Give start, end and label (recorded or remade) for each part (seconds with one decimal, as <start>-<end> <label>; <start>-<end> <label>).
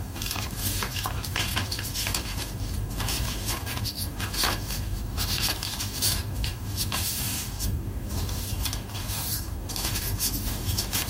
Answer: 0.0-11.1 remade